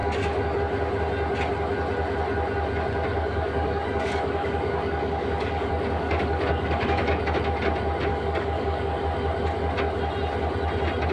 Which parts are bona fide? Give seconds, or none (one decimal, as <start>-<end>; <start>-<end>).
0.6-3.1; 7.2-8.1; 9.0-11.1